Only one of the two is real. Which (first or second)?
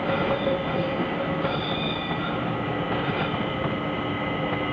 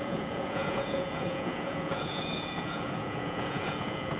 first